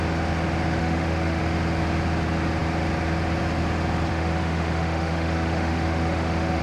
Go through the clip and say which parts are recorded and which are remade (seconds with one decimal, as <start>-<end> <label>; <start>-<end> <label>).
0.0-0.8 recorded; 0.8-1.4 remade; 1.4-4.1 recorded; 4.1-6.6 remade